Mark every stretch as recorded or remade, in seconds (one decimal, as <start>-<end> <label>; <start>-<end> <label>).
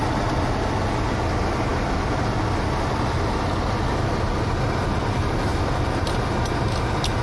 0.0-7.2 recorded